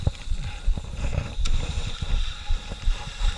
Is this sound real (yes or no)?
no